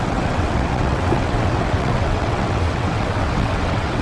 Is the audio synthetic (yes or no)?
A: yes